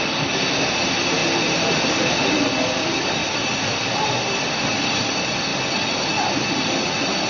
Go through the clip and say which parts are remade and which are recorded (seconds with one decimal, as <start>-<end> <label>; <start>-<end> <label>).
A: 0.0-7.3 recorded

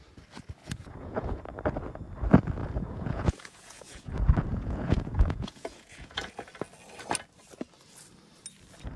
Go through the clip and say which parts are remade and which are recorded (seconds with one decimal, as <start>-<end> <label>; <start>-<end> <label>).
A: 0.0-0.6 recorded; 0.6-1.4 remade; 1.4-2.6 recorded; 2.6-4.1 remade; 4.1-4.5 recorded; 4.5-6.5 remade; 6.5-9.0 recorded

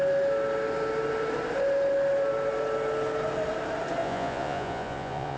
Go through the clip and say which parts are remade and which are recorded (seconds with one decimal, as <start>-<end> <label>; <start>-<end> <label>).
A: 0.0-4.0 recorded; 4.0-5.4 remade

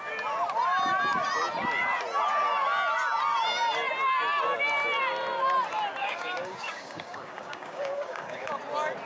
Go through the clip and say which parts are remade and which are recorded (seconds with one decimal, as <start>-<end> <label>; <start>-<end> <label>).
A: 0.0-6.0 recorded; 6.0-8.6 remade; 8.6-9.1 recorded

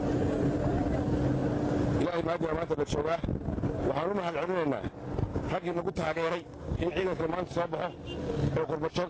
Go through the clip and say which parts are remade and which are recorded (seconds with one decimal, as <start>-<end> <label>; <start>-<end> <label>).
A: 0.0-5.3 recorded; 5.3-7.2 remade; 7.2-9.1 recorded

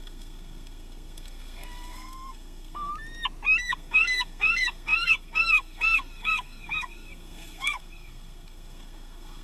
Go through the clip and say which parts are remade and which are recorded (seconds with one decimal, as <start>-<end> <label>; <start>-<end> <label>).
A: 0.0-2.9 remade; 2.9-3.6 recorded; 3.6-9.4 remade

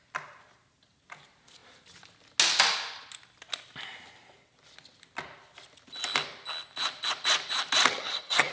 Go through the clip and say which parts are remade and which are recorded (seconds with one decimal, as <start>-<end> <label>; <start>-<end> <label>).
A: 0.0-7.9 recorded; 7.9-8.5 remade

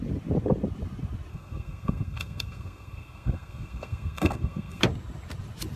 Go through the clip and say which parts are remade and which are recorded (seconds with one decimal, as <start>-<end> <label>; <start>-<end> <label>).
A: 0.0-1.3 recorded; 1.3-4.8 remade; 4.8-5.8 recorded